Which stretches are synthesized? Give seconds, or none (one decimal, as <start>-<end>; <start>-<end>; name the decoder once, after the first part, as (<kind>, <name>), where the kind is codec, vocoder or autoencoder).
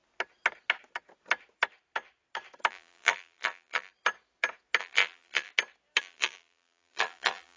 2.7-3.9 (vocoder, BigVGAN v2); 4.8-5.5; 6.0-7.6